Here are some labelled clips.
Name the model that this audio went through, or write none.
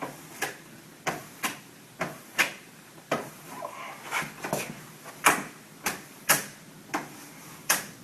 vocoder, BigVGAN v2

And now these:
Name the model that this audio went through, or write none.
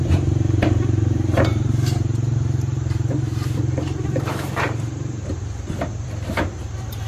vocoder, BigVGAN v2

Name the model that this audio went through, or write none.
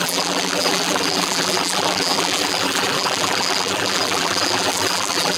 vocoder, BigVGAN v2